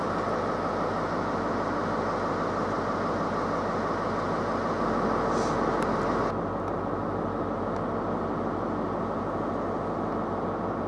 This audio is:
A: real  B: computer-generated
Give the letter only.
A